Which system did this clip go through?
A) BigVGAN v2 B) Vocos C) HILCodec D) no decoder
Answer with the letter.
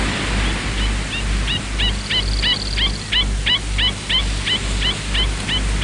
D